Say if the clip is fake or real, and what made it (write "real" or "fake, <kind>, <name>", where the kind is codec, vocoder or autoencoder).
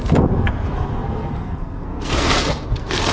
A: fake, codec, SNAC